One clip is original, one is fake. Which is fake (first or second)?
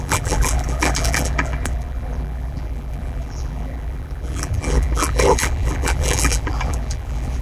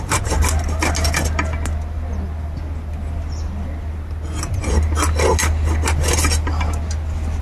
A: first